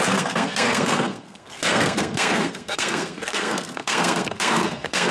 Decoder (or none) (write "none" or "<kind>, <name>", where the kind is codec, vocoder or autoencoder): codec, SNAC